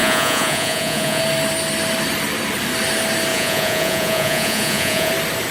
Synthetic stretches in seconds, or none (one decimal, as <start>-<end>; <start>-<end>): 0.0-1.2; 3.3-5.1